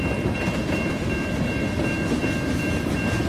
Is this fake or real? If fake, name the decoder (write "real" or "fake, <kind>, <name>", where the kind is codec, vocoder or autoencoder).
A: real